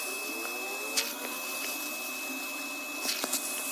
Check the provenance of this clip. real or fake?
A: real